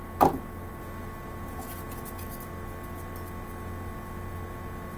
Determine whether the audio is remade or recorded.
recorded